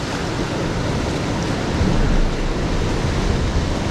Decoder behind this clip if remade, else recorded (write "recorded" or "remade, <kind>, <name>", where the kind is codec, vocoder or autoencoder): recorded